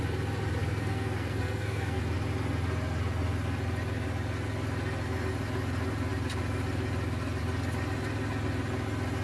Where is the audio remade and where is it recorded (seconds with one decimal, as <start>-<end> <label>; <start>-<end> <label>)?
0.0-0.6 recorded; 0.6-2.0 remade; 2.0-9.2 recorded